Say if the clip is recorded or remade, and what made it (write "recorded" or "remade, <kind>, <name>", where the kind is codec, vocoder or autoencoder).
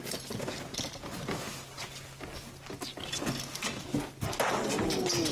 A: recorded